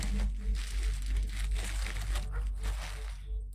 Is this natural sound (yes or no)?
yes